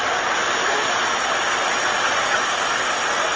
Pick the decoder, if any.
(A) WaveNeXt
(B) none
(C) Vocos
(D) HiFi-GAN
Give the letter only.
B